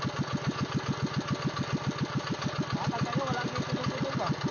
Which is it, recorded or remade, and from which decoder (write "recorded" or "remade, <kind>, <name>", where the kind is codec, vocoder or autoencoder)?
recorded